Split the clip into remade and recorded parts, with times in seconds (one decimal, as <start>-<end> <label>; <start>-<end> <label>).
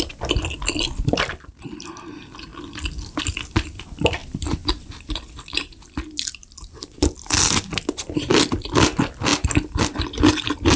0.0-10.8 recorded